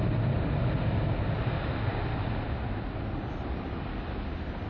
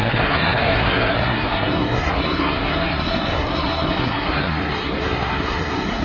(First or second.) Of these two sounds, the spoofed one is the second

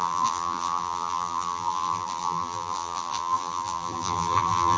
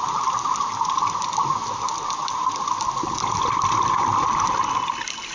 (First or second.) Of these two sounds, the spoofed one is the first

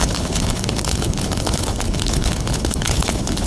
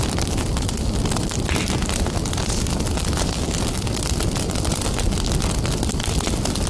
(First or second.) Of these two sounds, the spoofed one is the first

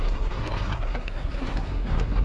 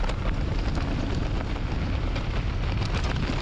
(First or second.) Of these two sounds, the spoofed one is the first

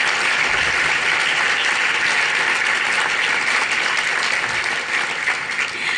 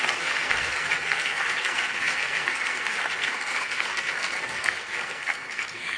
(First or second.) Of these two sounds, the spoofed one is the second